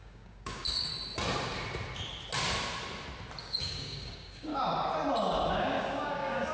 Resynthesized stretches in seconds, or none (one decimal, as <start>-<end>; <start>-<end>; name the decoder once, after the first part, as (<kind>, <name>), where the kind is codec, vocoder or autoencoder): 0.0-0.9 (codec, DAC); 3.4-4.5; 5.5-6.5